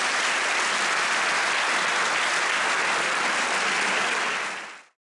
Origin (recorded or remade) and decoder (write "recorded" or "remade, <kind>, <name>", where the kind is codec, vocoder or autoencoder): recorded